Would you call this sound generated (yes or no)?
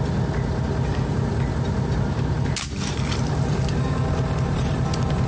no